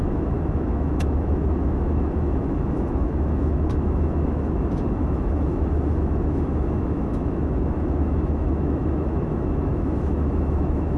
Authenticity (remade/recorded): remade